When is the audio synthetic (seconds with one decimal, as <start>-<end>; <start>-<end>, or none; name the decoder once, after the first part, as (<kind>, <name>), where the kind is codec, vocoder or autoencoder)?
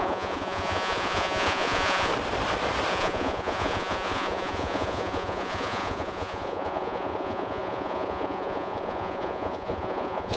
0.0-2.1 (vocoder, Vocos); 2.9-10.4